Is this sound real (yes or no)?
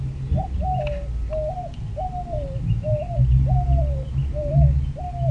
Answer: yes